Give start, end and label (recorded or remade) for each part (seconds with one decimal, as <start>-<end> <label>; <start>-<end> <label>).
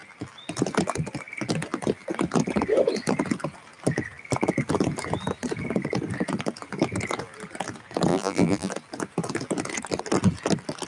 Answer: 0.0-8.1 recorded; 8.1-8.7 remade; 8.7-10.9 recorded